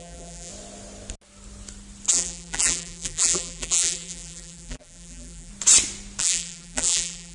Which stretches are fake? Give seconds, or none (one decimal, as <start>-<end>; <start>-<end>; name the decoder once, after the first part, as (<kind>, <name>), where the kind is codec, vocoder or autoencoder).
0.0-0.5 (vocoder, BigVGAN v2); 2.1-5.5; 6.2-7.3